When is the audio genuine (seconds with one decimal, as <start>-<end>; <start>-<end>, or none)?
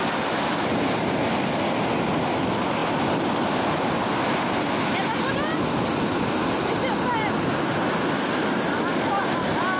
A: 0.0-9.8